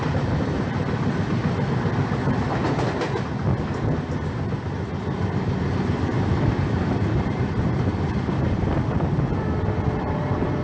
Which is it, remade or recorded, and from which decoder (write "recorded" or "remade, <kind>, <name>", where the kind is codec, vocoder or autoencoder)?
recorded